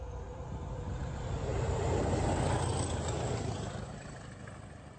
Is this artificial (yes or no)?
no